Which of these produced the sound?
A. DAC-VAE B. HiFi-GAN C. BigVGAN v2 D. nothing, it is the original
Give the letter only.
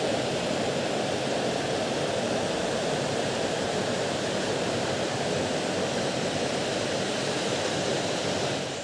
C